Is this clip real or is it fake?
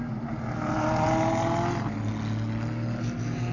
real